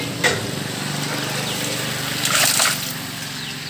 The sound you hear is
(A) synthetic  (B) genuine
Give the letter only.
B